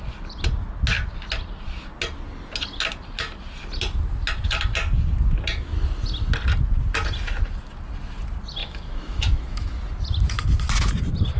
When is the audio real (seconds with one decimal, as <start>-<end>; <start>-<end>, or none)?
0.0-8.6; 9.8-11.4